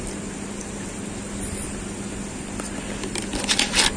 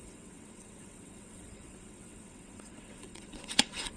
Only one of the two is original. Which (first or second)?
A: first